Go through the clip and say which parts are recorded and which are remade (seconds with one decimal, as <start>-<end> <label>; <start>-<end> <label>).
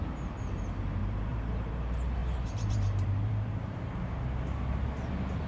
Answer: 0.0-1.0 recorded; 1.0-1.7 remade; 1.7-2.2 recorded; 2.2-5.1 remade; 5.1-5.5 recorded